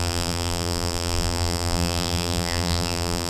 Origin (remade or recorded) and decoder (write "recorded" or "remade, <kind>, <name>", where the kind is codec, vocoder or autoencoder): remade, vocoder, BigVGAN v2